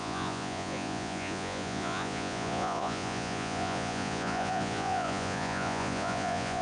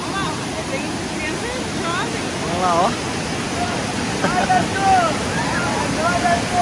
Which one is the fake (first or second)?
first